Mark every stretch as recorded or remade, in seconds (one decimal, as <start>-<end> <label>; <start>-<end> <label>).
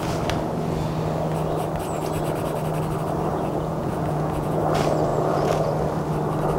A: 0.0-3.3 recorded; 3.3-4.6 remade; 4.6-5.1 recorded; 5.1-5.7 remade; 5.7-6.6 recorded